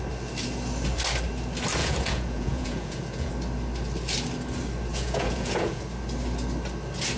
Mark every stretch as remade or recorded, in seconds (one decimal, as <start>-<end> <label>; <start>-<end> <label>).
0.0-1.8 recorded; 1.8-3.3 remade; 3.3-4.9 recorded; 4.9-5.8 remade; 5.8-7.2 recorded